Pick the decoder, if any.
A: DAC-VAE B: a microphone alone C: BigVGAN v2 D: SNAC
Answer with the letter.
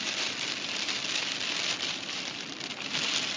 C